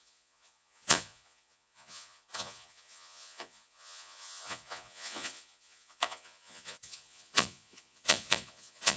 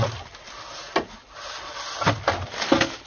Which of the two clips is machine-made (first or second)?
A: first